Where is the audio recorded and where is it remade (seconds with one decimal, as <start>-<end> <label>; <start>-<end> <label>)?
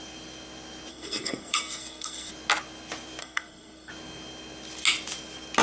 0.0-0.9 recorded; 0.9-2.3 remade; 2.3-3.2 recorded; 3.2-3.9 remade; 3.9-5.6 recorded